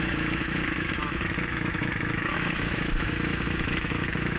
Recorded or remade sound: remade